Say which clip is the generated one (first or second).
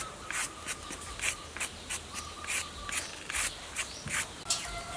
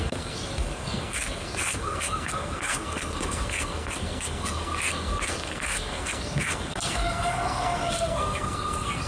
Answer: second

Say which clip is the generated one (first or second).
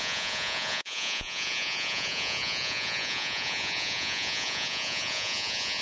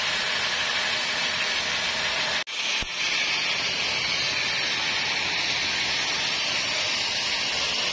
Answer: first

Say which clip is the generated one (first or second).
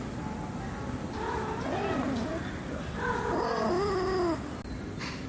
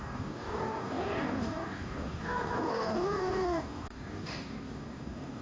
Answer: second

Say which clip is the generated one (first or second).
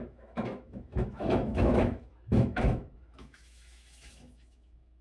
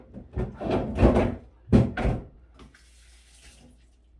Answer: first